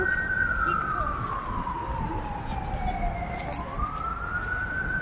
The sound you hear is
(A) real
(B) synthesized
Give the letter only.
A